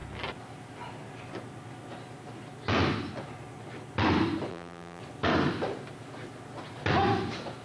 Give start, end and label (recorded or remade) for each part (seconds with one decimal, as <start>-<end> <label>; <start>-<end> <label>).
0.0-4.5 recorded; 4.5-5.0 remade; 5.0-7.6 recorded